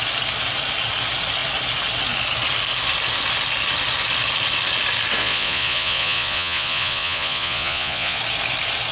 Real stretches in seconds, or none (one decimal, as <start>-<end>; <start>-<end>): 0.0-5.2; 8.2-8.9